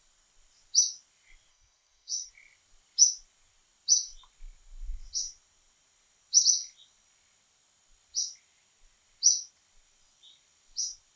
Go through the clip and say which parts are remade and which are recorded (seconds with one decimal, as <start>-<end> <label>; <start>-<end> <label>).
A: 0.0-1.5 recorded; 1.5-2.3 remade; 2.3-11.2 recorded